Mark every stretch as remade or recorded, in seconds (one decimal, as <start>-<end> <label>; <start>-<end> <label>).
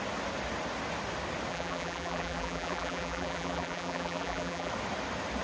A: 0.0-1.5 recorded; 1.5-4.7 remade; 4.7-5.4 recorded